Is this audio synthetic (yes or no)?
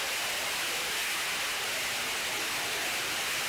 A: no